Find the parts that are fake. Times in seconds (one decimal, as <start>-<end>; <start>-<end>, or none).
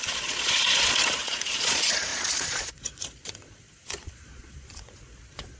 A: 0.0-5.6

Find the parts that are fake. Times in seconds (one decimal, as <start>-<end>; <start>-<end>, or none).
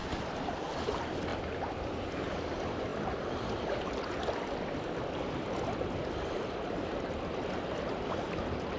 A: 0.0-2.9; 3.9-8.8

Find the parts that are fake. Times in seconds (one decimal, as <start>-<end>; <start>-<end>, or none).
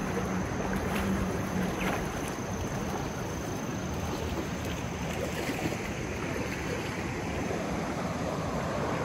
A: 0.8-3.7; 6.4-9.0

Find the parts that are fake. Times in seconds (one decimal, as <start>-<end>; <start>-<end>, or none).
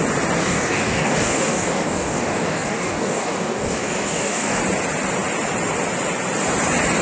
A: 0.4-4.6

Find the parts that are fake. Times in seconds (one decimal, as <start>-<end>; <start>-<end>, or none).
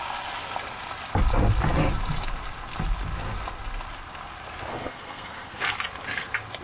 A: 4.7-5.6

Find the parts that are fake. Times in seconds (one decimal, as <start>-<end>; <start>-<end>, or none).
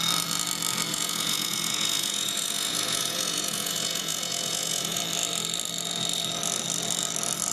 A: 0.9-5.0